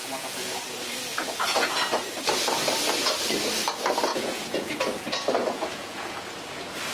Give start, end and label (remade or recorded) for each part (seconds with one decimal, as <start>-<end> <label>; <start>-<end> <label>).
0.0-0.6 remade; 0.6-1.1 recorded; 1.1-1.9 remade; 1.9-4.1 recorded; 4.1-4.7 remade; 4.7-5.4 recorded; 5.4-6.2 remade; 6.2-6.9 recorded